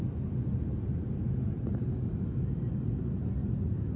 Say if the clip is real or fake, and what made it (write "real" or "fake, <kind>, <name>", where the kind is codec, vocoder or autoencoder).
real